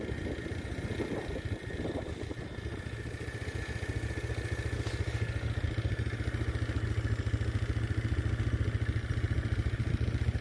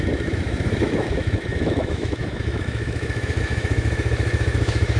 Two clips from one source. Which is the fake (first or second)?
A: second